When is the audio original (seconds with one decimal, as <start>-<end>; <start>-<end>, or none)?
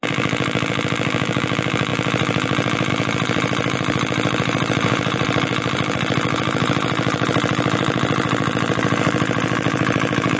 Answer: none